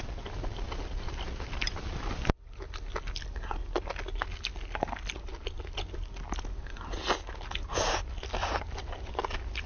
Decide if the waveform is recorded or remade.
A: recorded